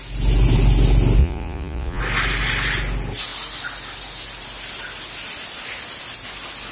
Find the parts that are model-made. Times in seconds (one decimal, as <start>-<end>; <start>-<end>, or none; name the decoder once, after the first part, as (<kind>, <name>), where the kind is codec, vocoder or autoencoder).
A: 1.2-2.0 (vocoder, Vocos)